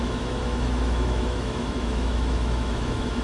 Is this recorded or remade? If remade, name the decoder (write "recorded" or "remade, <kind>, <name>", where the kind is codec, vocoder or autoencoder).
remade, autoencoder, DAC-VAE